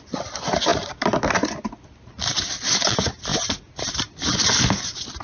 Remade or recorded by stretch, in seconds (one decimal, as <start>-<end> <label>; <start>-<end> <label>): 0.0-3.3 recorded; 3.3-3.8 remade; 3.8-5.2 recorded